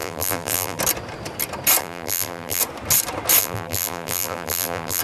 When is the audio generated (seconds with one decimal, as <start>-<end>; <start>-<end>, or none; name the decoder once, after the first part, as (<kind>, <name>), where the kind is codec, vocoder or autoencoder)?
0.0-0.8 (vocoder, BigVGAN v2); 1.8-2.6; 3.4-5.0